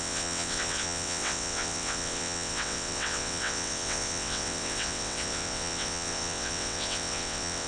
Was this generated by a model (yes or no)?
yes